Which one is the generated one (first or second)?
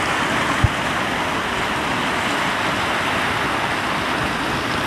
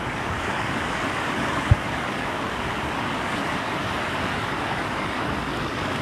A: second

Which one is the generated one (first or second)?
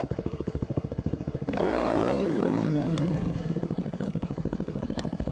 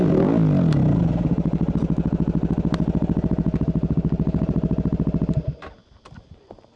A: first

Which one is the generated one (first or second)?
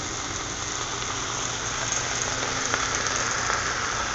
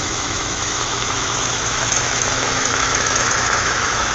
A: second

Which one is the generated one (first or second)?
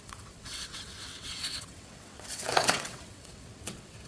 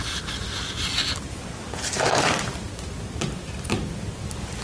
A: first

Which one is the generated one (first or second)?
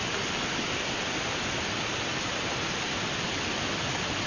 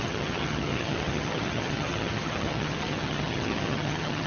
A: second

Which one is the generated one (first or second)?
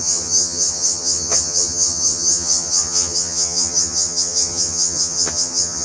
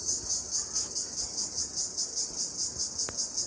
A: first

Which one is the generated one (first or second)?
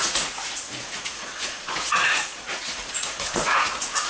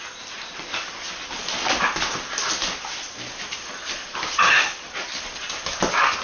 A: first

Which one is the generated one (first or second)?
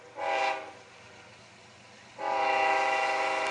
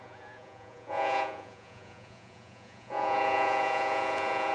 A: second